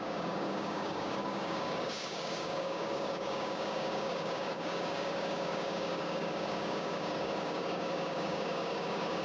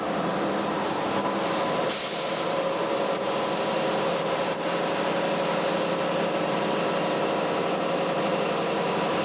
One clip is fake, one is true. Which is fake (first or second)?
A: first